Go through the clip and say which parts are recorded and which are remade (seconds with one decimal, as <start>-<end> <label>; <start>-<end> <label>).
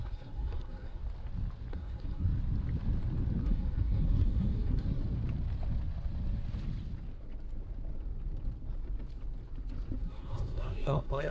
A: 0.0-1.0 remade; 1.0-1.7 recorded; 1.7-2.3 remade; 2.3-3.4 recorded; 3.4-5.0 remade; 5.0-10.0 recorded; 10.0-11.3 remade